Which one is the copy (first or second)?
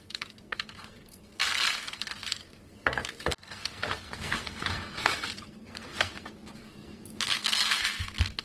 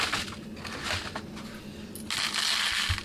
first